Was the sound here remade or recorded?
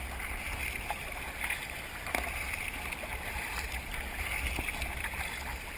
recorded